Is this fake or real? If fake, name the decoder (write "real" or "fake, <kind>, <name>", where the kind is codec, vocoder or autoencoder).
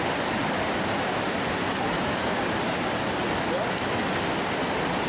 real